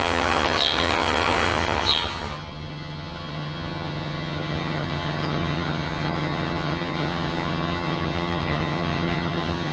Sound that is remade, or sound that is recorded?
remade